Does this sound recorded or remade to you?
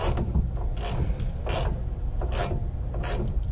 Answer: recorded